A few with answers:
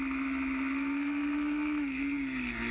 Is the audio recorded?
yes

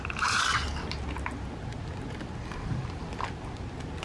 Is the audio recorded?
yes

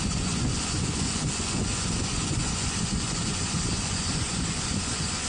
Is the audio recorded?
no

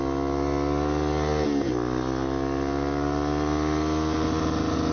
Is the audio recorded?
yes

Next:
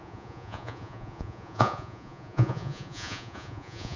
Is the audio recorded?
no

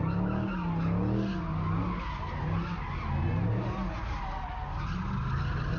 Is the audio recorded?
yes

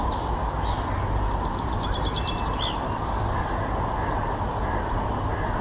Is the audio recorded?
yes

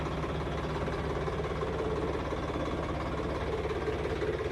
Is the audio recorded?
yes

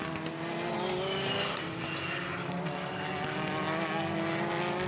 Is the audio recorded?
yes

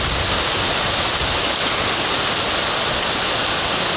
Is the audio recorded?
yes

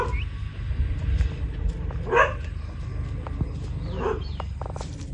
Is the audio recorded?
yes